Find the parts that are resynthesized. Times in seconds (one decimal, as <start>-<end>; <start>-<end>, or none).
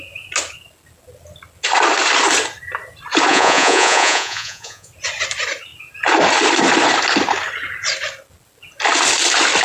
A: 3.3-4.9